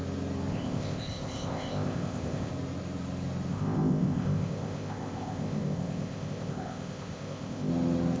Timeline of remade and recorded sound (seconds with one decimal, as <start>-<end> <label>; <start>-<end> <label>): 0.0-0.5 recorded; 0.5-2.5 remade; 2.5-3.5 recorded; 3.5-7.7 remade; 7.7-8.2 recorded